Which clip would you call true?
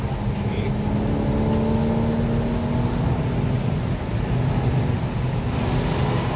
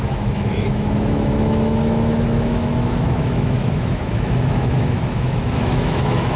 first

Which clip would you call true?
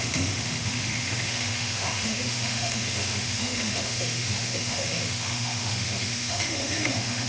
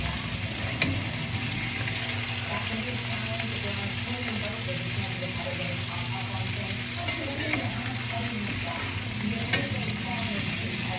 second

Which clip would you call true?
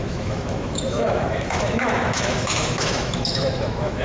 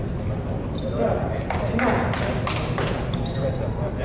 second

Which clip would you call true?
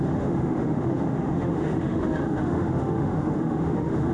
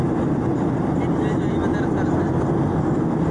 second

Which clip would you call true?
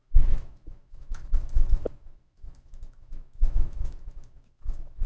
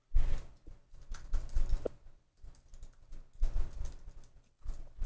second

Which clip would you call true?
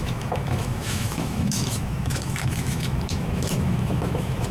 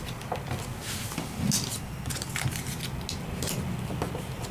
second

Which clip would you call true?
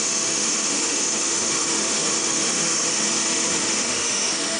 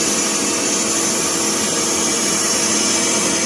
second